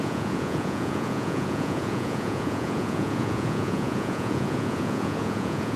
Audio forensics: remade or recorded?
remade